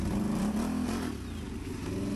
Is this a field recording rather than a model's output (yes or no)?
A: yes